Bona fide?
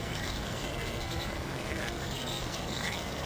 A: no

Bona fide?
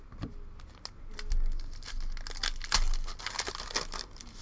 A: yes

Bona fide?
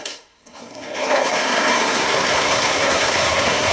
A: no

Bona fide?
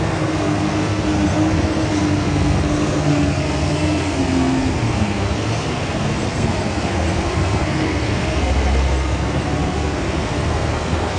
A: no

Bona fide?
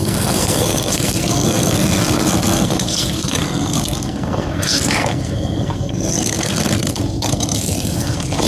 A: no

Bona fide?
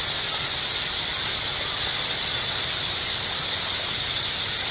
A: yes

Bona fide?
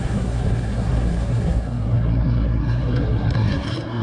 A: no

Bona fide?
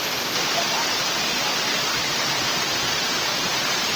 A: yes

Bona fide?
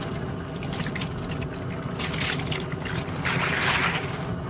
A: yes